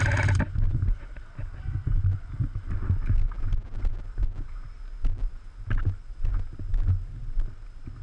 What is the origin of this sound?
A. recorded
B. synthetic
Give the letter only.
A